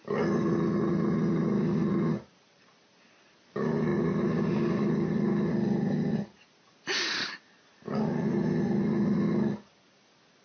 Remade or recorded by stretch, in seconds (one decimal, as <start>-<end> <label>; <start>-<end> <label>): 0.0-10.4 recorded